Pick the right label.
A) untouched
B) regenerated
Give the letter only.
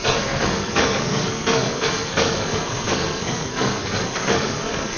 B